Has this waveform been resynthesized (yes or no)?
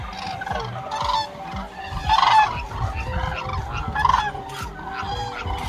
no